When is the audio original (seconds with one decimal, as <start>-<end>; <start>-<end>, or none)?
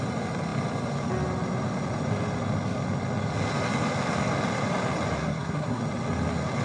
0.0-5.2; 5.8-6.6